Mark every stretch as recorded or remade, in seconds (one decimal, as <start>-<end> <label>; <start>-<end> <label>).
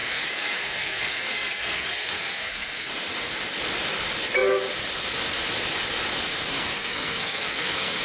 0.0-2.9 remade; 2.9-6.5 recorded; 6.5-8.0 remade